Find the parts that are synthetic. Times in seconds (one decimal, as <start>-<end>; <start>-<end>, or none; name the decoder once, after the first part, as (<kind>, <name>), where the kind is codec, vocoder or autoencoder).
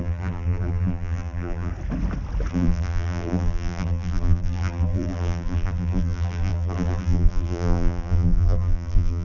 0.0-1.7 (vocoder, BigVGAN v2); 2.5-9.2